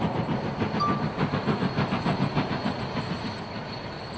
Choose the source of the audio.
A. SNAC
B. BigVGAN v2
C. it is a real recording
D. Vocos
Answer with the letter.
C